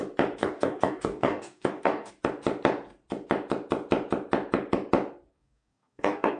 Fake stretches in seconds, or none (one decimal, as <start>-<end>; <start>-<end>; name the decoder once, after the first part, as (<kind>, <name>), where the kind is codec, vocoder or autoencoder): 0.4-2.1 (codec, DAC); 5.3-6.4